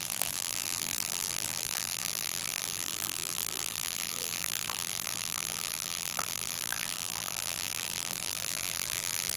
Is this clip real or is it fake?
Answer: fake